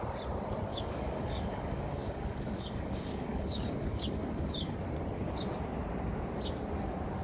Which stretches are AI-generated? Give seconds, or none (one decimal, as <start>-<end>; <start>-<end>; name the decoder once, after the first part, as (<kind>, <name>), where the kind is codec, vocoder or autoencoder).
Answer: 0.7-4.7 (codec, DAC)